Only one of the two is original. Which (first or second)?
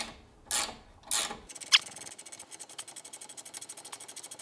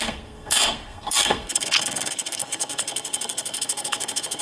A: first